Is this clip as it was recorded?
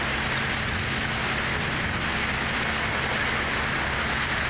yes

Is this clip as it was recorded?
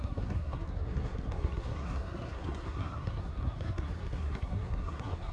no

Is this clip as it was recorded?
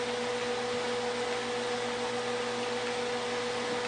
yes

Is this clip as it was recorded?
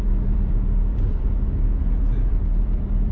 no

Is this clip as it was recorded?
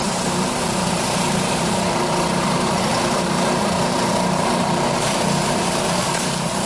no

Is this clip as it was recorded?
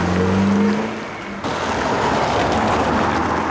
yes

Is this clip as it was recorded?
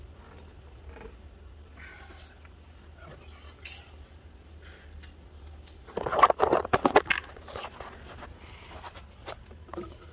yes